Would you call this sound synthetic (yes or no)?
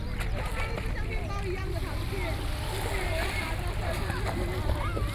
no